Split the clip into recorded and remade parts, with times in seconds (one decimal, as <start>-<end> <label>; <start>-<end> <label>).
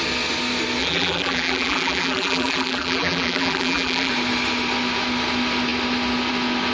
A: 0.0-0.8 recorded; 0.8-4.1 remade; 4.1-6.7 recorded